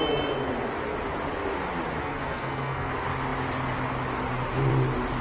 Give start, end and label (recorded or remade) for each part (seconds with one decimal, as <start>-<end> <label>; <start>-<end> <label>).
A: 0.0-2.0 recorded; 2.0-2.9 remade; 2.9-5.2 recorded

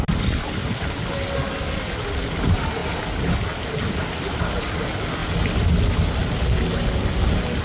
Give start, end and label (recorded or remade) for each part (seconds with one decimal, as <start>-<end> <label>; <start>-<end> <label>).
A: 0.0-0.6 recorded; 0.6-1.2 remade; 1.2-7.6 recorded

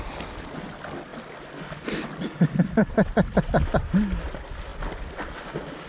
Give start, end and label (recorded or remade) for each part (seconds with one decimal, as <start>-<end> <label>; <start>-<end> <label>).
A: 0.0-2.8 recorded; 2.8-3.5 remade; 3.5-5.9 recorded

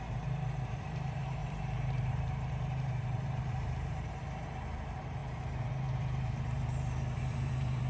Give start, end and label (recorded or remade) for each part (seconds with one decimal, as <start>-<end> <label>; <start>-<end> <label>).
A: 0.0-7.9 remade

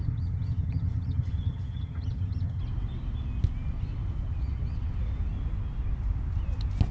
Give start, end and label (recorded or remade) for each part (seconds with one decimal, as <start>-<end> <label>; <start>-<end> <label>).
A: 0.0-2.6 remade; 2.6-6.9 recorded

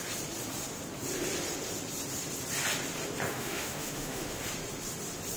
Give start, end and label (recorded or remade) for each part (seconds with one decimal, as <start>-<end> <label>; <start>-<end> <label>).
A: 0.0-3.3 recorded; 3.3-4.4 remade; 4.4-5.4 recorded

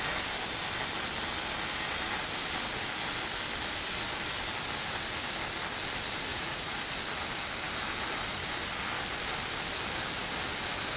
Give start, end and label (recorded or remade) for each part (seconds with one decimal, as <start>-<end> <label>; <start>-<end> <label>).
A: 0.0-6.3 recorded; 6.3-6.8 remade; 6.8-11.0 recorded